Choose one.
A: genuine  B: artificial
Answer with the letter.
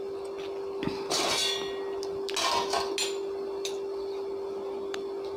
A